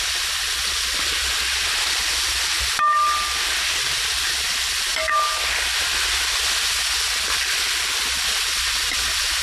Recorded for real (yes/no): yes